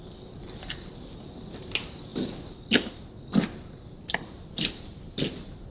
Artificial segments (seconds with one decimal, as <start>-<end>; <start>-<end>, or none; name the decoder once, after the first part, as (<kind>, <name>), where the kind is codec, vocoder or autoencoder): none